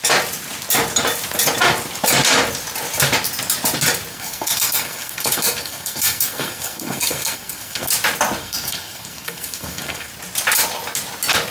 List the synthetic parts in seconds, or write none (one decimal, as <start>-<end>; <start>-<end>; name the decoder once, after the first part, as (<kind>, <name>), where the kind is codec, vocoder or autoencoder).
4.1-7.9 (codec, SNAC); 8.4-10.1